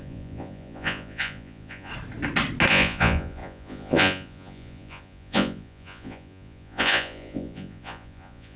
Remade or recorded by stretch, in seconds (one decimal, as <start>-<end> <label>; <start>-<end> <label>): 0.0-1.9 remade; 1.9-2.7 recorded; 2.7-8.6 remade